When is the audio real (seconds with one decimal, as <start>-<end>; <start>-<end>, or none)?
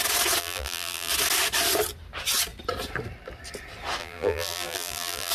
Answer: 0.0-0.4; 1.1-4.0